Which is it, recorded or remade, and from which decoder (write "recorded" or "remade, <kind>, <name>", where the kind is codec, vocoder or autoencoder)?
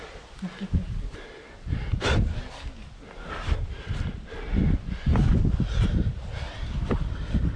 recorded